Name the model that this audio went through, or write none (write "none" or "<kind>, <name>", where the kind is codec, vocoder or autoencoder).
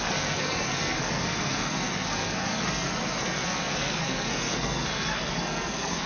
codec, SNAC